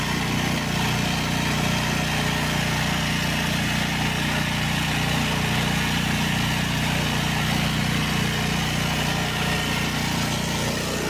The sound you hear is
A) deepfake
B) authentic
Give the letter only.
B